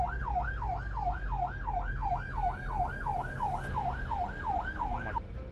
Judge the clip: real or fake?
real